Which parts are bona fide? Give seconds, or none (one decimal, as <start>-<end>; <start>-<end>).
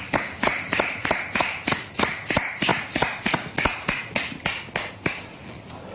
0.0-0.5; 1.2-5.9